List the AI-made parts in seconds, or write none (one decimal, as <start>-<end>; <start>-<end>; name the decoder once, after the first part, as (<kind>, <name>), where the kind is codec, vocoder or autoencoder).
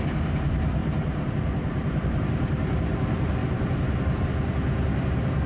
0.8-2.2 (vocoder, BigVGAN v2); 3.4-4.0